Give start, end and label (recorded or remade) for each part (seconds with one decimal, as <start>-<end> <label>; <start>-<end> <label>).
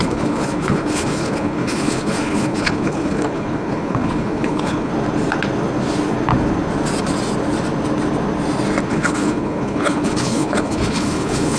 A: 0.0-4.9 remade; 4.9-8.9 recorded; 8.9-11.6 remade